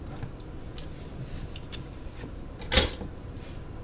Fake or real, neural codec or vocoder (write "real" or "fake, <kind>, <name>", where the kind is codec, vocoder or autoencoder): real